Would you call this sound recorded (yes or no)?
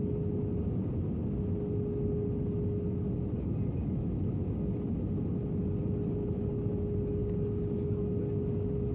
yes